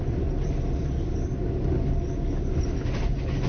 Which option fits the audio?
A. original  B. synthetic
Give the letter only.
A